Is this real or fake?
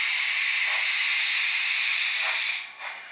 real